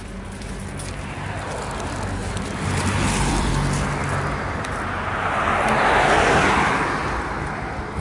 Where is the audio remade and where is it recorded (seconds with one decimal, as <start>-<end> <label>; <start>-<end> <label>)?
0.0-2.2 recorded; 2.2-3.5 remade; 3.5-4.0 recorded; 4.0-4.6 remade; 4.6-8.0 recorded